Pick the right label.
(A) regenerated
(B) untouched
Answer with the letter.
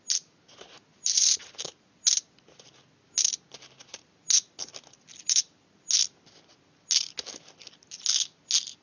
B